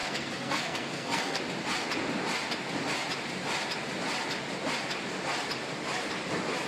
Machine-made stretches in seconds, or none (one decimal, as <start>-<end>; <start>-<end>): 0.0-1.4